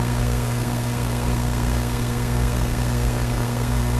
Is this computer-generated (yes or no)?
yes